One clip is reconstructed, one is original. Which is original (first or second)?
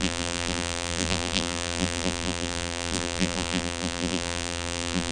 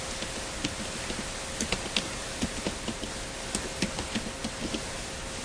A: second